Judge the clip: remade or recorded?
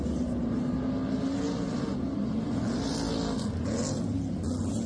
recorded